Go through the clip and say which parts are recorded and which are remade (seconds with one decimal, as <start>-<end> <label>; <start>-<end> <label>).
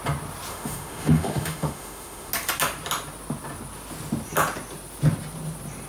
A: 0.0-0.5 recorded; 0.5-2.3 remade; 2.3-5.9 recorded